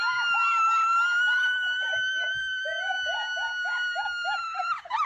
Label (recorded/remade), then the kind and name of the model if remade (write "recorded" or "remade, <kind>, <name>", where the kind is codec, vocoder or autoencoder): recorded